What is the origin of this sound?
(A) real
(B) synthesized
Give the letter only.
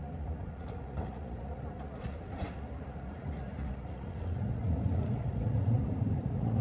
B